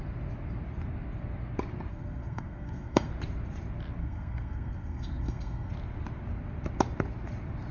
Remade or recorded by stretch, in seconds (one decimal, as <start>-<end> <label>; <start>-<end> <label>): 0.0-1.9 recorded; 1.9-3.1 remade; 3.1-4.0 recorded; 4.0-5.7 remade; 5.7-7.7 recorded